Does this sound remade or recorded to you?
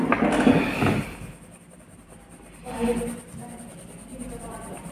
remade